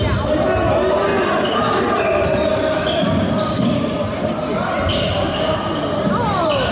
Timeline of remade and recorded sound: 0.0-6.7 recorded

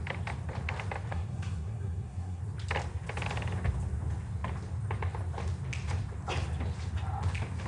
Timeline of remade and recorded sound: 0.0-1.1 recorded; 1.1-2.4 remade; 2.4-7.7 recorded

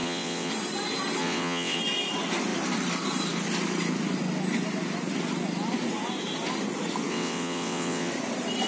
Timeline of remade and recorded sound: 0.0-0.5 remade; 0.5-1.2 recorded; 1.2-1.8 remade; 1.8-7.1 recorded; 7.1-8.1 remade; 8.1-8.7 recorded